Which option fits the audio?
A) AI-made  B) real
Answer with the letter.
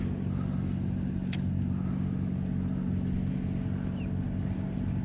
B